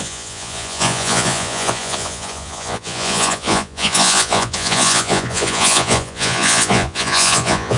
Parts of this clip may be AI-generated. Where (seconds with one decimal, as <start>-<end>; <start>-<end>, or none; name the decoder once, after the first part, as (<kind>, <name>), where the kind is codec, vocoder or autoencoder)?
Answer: 0.0-7.8 (vocoder, Vocos)